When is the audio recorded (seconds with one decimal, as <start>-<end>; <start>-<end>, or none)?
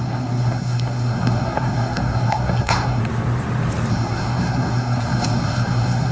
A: 3.0-3.9